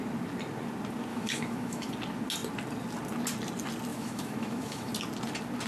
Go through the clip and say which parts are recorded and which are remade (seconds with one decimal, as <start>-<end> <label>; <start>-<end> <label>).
0.0-1.1 recorded; 1.1-1.9 remade; 1.9-3.9 recorded; 3.9-4.9 remade; 4.9-5.7 recorded